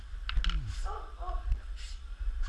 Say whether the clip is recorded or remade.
recorded